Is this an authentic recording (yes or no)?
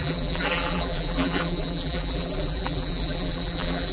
no